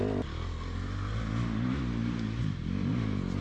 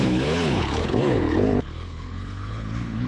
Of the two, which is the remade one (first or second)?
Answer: second